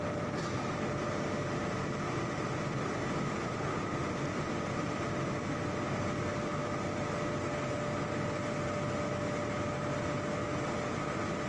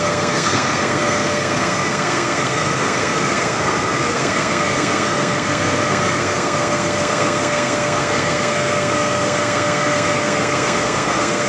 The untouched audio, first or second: first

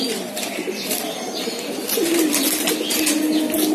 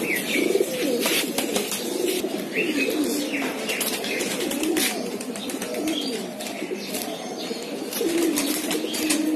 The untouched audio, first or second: first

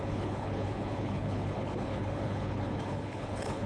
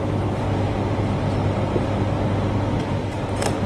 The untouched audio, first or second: second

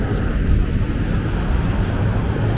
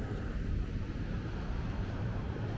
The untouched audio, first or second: first